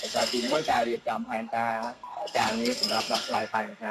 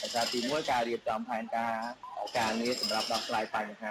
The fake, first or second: first